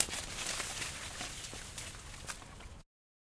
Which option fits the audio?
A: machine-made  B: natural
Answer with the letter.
B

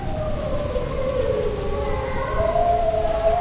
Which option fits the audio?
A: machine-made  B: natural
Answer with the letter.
B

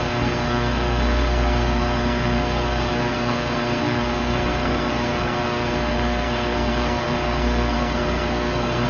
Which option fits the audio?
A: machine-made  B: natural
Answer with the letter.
A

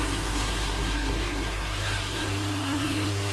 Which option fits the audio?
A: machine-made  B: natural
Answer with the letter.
A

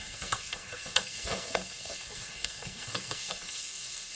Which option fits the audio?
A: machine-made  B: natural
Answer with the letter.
A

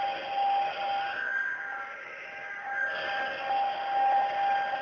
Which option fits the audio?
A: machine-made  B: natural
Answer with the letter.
B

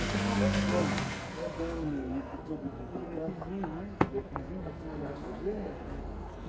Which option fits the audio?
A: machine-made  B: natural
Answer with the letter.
A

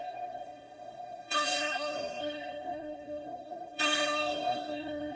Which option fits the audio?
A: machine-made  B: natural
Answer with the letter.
A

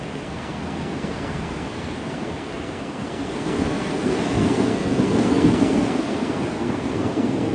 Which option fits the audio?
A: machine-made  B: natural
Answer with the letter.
A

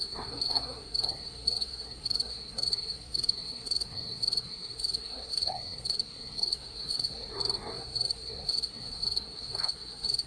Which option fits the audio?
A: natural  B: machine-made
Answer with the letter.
B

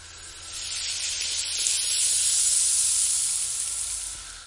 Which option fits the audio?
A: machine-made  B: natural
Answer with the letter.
B